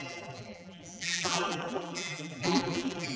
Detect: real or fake fake